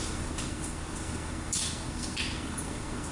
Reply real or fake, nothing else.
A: fake